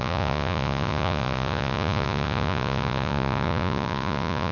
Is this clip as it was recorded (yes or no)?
no